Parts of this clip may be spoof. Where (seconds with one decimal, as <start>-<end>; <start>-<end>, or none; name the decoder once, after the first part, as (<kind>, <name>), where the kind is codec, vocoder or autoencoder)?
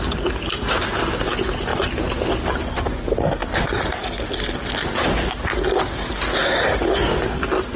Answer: 3.4-4.2 (vocoder, BigVGAN v2)